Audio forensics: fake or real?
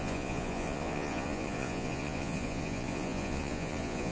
fake